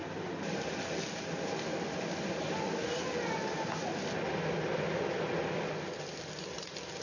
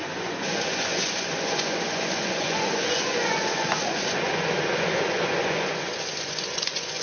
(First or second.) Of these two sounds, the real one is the first